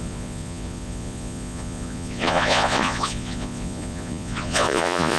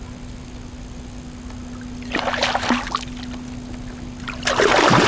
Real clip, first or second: second